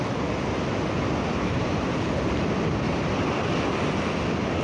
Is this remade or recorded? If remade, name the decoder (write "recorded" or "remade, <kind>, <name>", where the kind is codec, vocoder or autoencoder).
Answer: recorded